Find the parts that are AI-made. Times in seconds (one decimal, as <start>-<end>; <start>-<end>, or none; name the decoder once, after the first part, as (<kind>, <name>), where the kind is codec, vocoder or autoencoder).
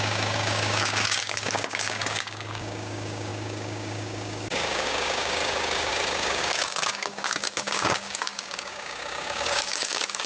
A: 0.0-10.3 (codec, DAC)